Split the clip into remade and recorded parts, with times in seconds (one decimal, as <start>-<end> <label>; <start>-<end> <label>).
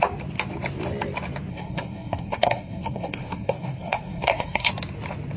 0.0-1.5 recorded; 1.5-4.7 remade; 4.7-5.4 recorded